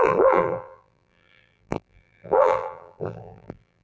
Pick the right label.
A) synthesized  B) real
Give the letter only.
A